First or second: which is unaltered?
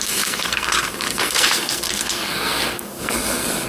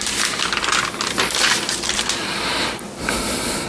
second